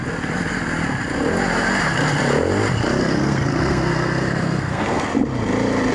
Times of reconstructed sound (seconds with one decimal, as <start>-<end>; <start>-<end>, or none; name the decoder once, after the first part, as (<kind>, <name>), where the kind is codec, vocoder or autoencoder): 3.0-5.0 (codec, SNAC)